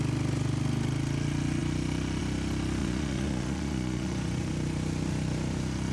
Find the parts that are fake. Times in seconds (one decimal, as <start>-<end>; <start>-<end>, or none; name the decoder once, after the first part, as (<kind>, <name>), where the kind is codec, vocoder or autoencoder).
2.8-4.5 (vocoder, Vocos)